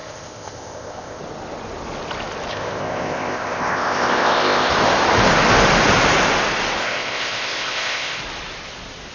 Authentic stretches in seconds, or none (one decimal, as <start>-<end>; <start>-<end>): 1.2-2.5; 4.7-6.8; 8.2-9.1

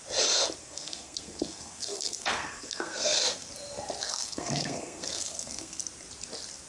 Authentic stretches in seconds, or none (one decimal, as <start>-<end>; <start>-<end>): 0.0-0.6; 3.5-4.0; 5.8-6.7

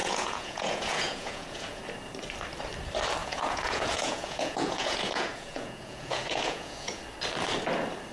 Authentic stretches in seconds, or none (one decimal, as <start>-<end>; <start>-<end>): 1.8-3.2; 7.0-8.1

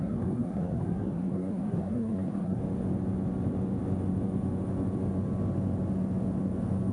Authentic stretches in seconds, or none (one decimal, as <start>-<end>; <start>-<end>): 2.6-6.9

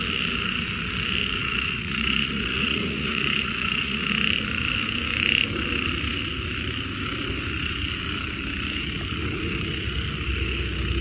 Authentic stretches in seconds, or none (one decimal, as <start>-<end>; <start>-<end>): 0.0-1.4; 4.1-11.0

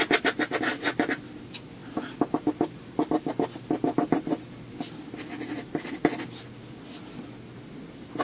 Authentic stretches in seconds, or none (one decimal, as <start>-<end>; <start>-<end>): 0.0-8.2